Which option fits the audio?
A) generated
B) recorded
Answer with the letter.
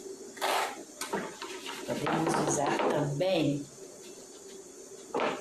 B